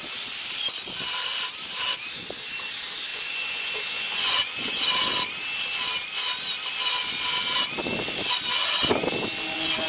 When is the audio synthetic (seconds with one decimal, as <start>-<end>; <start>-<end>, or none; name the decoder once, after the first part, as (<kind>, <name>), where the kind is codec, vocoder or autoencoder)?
3.1-4.8 (vocoder, Vocos)